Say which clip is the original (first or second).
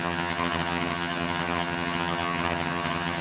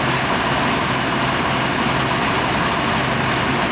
second